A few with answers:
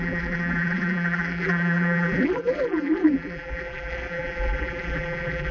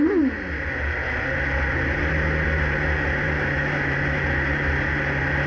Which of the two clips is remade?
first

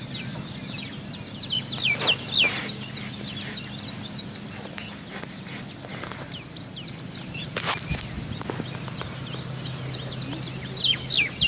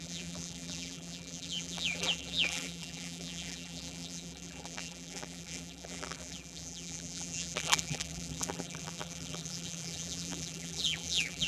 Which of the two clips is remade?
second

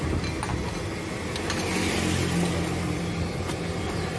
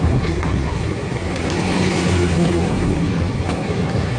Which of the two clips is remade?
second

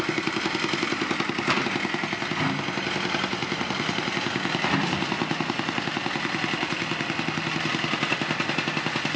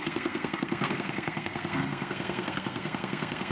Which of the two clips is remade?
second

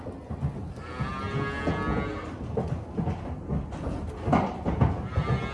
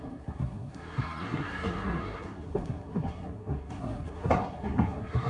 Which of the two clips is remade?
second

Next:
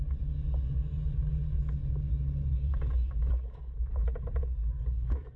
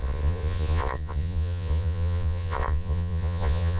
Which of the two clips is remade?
second